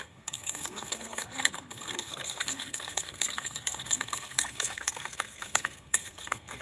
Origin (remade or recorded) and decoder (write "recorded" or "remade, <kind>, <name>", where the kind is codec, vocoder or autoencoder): remade, codec, SNAC